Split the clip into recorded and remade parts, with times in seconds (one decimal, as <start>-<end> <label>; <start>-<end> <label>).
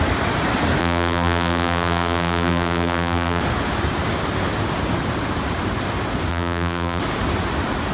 0.0-0.8 recorded; 0.8-3.4 remade; 3.4-6.3 recorded; 6.3-7.0 remade; 7.0-7.9 recorded